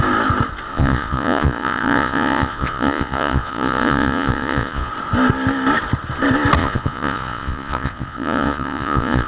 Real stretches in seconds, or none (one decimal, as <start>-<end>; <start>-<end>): 0.0-0.7; 4.9-6.6

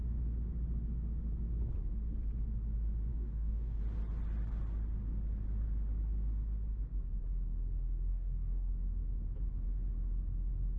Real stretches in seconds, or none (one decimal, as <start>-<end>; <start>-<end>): 0.0-3.1; 3.8-8.1; 8.7-10.8